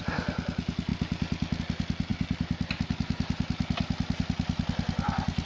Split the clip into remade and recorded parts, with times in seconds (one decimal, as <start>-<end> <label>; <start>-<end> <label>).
0.0-5.5 recorded